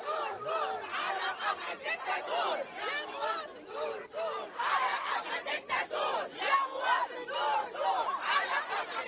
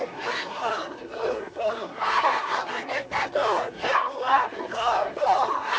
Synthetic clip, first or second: second